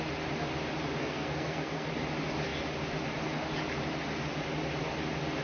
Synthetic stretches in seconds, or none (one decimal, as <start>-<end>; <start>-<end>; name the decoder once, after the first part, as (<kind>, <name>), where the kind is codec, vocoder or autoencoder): 1.0-1.9 (codec, SNAC)